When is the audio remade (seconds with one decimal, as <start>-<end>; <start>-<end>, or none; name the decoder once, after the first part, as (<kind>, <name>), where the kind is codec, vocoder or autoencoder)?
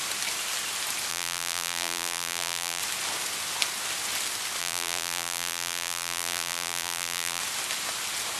1.1-2.8 (vocoder, BigVGAN v2); 4.6-7.4